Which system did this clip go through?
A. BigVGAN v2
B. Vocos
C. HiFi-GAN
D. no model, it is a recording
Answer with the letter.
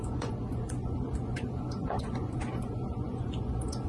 B